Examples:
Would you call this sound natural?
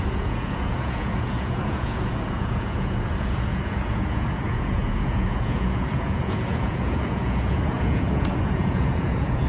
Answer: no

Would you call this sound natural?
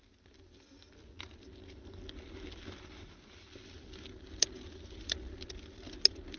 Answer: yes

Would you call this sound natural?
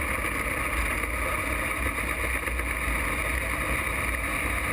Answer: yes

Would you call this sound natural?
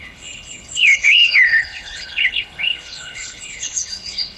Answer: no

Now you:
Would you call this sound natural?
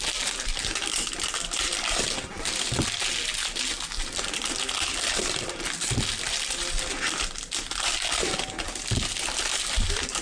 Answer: yes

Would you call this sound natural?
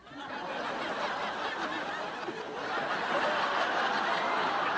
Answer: yes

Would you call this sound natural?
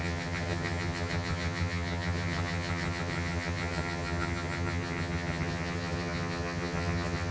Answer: no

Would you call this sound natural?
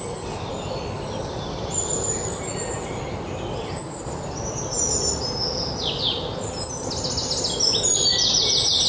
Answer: yes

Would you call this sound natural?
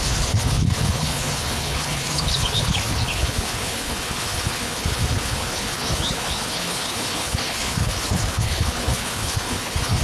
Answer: no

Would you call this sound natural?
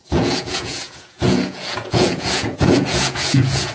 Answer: no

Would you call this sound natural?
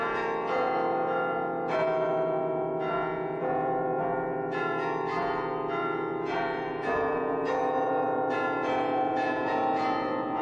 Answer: no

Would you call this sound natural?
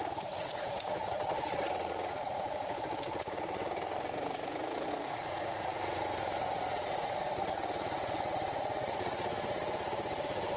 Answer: no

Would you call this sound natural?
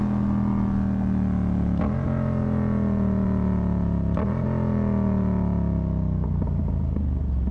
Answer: yes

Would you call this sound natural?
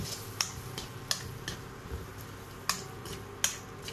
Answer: yes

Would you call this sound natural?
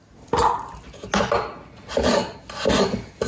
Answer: yes